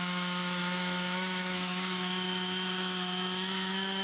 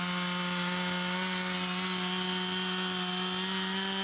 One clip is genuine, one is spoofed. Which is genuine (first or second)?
second